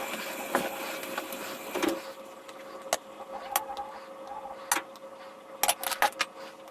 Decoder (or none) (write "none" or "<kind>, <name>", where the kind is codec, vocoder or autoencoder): none